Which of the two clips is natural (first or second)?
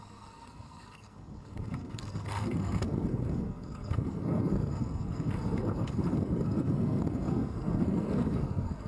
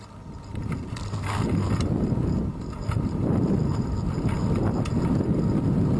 second